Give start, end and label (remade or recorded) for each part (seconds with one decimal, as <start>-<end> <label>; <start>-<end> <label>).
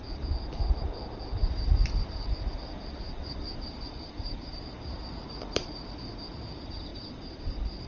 0.0-1.4 recorded; 1.4-6.1 remade; 6.1-6.9 recorded; 6.9-7.9 remade